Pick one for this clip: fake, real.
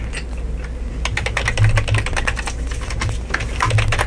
real